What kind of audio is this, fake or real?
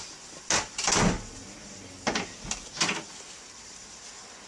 real